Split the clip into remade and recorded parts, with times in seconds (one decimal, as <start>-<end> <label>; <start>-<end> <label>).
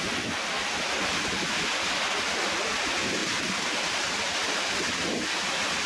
0.0-3.2 recorded; 3.2-4.7 remade; 4.7-5.9 recorded